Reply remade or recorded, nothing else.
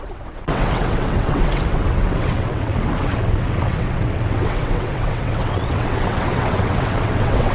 remade